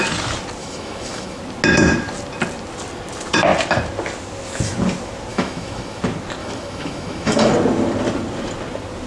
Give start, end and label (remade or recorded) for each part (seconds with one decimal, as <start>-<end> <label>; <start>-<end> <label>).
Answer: 0.0-0.6 recorded; 0.6-1.4 remade; 1.4-5.3 recorded; 5.3-6.0 remade; 6.0-6.4 recorded; 6.4-7.5 remade; 7.5-9.1 recorded